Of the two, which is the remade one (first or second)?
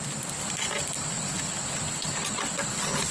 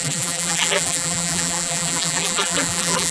second